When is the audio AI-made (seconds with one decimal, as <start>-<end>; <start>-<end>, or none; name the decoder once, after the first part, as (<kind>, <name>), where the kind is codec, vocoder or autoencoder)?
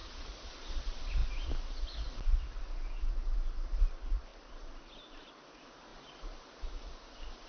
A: 0.0-0.5 (vocoder, Vocos)